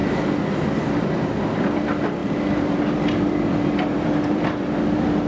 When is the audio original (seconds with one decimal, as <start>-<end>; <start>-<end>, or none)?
0.0-2.2